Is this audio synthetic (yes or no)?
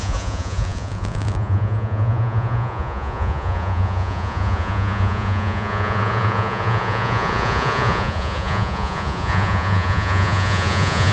yes